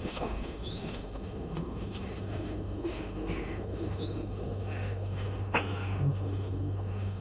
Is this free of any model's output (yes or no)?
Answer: no